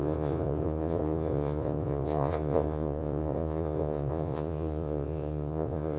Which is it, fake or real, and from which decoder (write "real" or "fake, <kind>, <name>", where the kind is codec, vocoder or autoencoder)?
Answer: fake, vocoder, Vocos